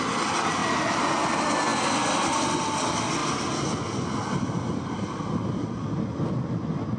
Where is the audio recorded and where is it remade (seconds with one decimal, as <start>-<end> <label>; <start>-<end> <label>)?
0.0-7.0 recorded

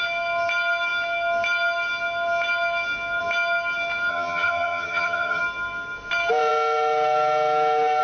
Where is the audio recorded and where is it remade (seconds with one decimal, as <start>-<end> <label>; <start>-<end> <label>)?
0.0-4.1 recorded; 4.1-5.4 remade; 5.4-8.0 recorded

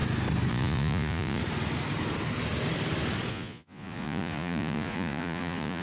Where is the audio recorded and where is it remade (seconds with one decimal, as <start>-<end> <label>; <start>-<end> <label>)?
0.0-0.5 recorded; 0.5-1.4 remade; 1.4-3.3 recorded; 3.3-5.8 remade